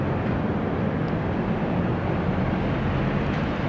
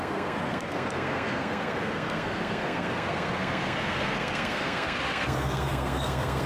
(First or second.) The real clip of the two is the first